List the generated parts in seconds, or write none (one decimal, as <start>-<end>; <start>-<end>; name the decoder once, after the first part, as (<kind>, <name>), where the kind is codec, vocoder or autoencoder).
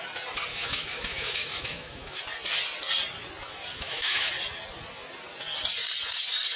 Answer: 0.5-2.2 (autoencoder, DAC-VAE); 3.7-4.3